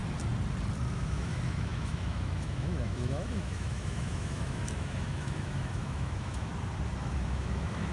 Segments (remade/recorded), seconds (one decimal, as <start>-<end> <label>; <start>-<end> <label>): 0.0-0.9 recorded; 0.9-6.5 remade; 6.5-7.0 recorded; 7.0-7.9 remade